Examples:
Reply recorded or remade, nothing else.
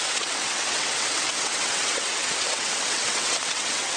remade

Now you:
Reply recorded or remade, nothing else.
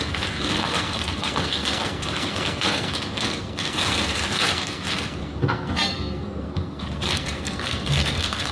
remade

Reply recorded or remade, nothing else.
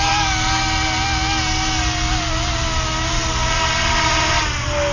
recorded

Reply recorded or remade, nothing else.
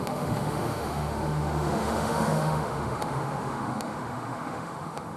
remade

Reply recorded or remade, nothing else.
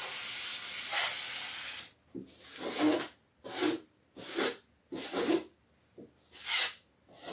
recorded